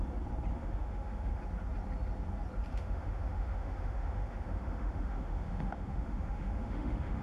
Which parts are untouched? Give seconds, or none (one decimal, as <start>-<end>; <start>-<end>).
0.0-0.5; 1.4-2.7